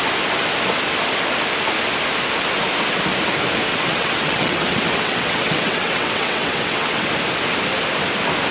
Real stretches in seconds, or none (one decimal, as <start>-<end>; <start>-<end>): 0.0-3.7; 7.1-8.5